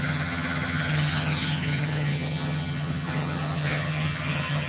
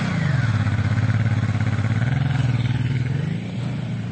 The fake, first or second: first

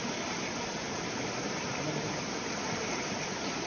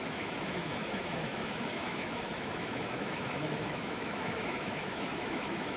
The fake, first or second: second